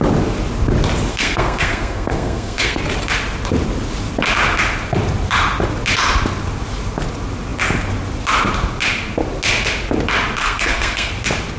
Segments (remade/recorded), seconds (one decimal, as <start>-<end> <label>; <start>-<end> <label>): 0.0-1.1 recorded; 1.1-2.8 remade; 2.8-10.4 recorded; 10.4-11.1 remade; 11.1-11.6 recorded